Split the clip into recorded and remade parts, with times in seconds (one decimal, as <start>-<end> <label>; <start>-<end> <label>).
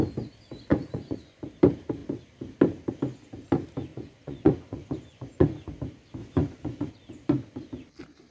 0.0-0.7 recorded; 0.7-1.5 remade; 1.5-3.9 recorded; 3.9-5.7 remade; 5.7-6.2 recorded; 6.2-6.9 remade; 6.9-8.3 recorded